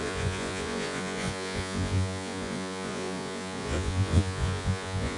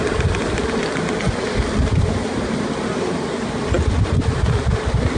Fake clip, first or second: first